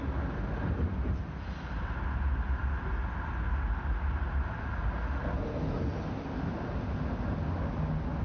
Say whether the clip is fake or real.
real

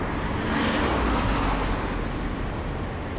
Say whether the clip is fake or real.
real